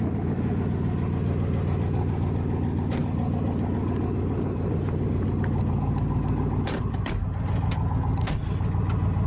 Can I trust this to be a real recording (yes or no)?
yes